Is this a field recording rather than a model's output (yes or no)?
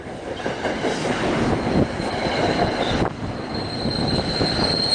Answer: yes